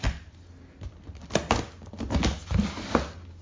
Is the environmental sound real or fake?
real